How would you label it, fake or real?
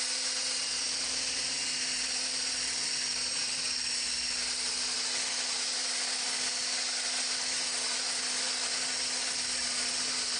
real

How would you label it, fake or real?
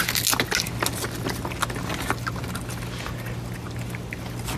real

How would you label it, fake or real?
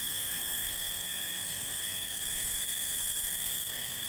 fake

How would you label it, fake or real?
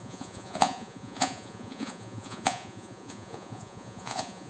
fake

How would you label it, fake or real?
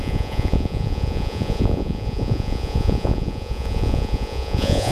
fake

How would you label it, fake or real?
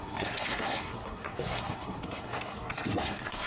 fake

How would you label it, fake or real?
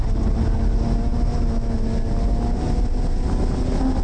real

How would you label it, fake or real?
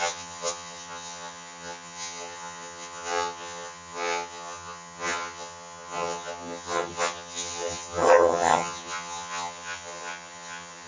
fake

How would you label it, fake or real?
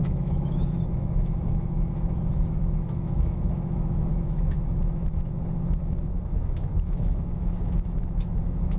fake